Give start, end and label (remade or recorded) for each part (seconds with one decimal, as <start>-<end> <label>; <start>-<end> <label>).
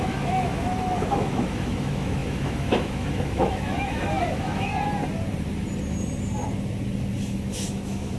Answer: 0.0-4.7 remade; 4.7-7.2 recorded; 7.2-8.2 remade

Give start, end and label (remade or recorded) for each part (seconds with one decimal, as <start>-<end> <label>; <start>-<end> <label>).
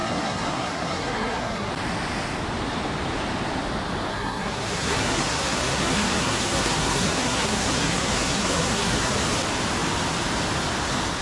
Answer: 0.0-1.7 remade; 1.7-4.1 recorded; 4.1-9.1 remade; 9.1-11.2 recorded